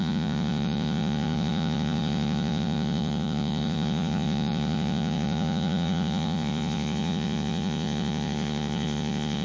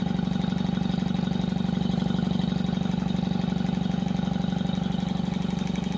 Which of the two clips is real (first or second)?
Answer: second